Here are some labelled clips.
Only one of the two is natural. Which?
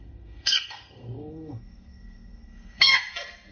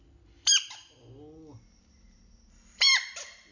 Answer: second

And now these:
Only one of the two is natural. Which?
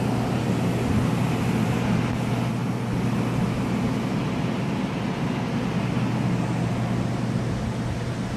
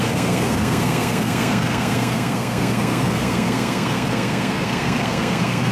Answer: first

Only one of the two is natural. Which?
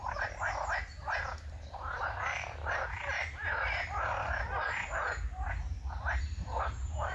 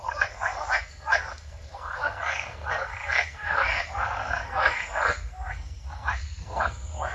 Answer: first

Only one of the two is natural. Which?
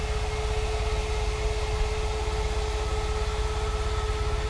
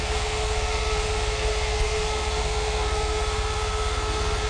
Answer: first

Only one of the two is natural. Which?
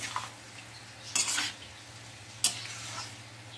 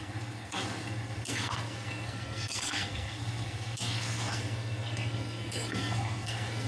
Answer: first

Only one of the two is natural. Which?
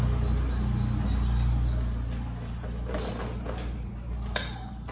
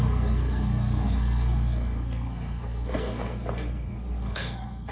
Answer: first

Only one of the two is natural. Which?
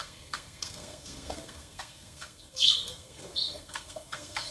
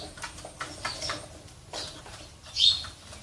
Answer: second